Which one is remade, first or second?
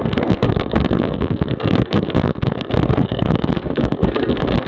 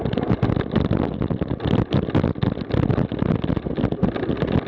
first